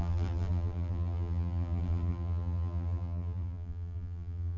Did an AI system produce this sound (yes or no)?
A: yes